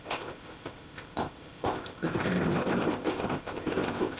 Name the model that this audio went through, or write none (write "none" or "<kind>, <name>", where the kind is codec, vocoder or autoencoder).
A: codec, ZipCodec